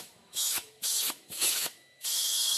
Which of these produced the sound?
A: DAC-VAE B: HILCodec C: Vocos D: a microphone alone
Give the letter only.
A